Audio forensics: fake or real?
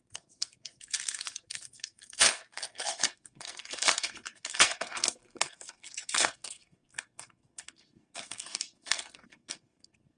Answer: fake